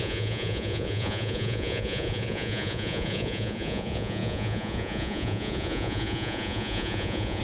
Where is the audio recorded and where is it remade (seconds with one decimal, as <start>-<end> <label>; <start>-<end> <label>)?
0.0-7.4 remade